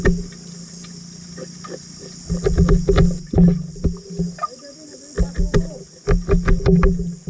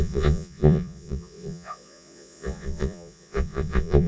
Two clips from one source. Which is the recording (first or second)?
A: first